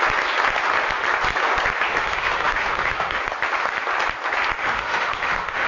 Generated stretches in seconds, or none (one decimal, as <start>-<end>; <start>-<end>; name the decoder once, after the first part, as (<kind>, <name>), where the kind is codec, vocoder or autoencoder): 1.9-3.2 (autoencoder, DAC-VAE); 4.6-5.7